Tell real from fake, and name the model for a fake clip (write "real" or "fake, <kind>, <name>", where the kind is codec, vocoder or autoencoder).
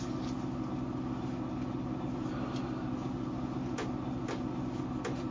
real